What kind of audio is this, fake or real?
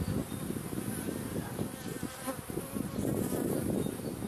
real